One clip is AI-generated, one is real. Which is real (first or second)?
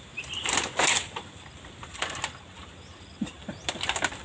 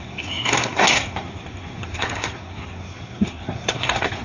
first